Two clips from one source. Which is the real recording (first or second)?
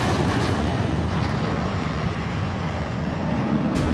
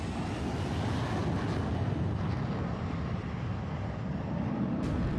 second